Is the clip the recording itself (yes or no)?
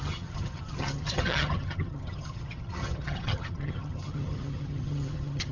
no